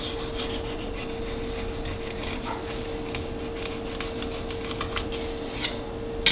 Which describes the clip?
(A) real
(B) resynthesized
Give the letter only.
A